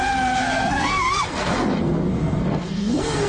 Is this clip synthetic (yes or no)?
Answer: yes